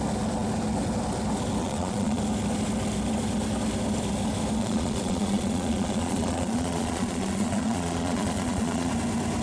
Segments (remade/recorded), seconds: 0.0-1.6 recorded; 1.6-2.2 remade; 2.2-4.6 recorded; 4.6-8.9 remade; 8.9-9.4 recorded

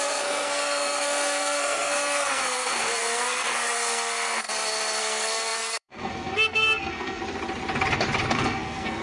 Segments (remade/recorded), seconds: 0.0-4.5 remade; 4.5-5.0 recorded; 5.0-7.2 remade; 7.2-8.3 recorded; 8.3-9.0 remade

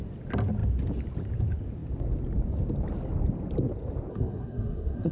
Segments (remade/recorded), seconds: 0.0-4.1 recorded; 4.1-5.1 remade